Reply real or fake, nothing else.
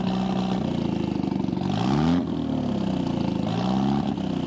real